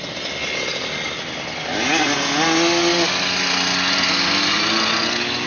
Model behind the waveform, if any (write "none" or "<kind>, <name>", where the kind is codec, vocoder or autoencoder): none